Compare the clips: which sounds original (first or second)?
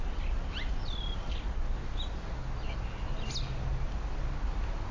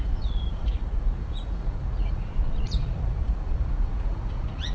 first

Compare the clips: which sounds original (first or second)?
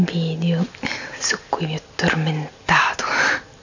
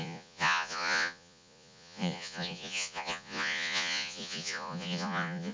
first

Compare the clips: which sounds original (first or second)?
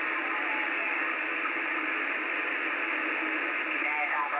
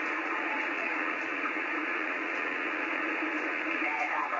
first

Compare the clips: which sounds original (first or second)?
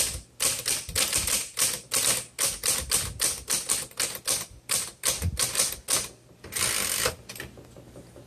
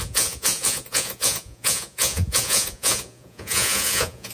first